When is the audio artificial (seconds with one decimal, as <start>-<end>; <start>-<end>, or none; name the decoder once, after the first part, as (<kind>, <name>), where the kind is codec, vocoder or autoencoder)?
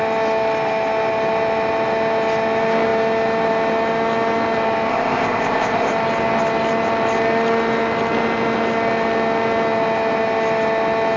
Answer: 4.9-5.9 (codec, ZipCodec)